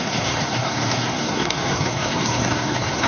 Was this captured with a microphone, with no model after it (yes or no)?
no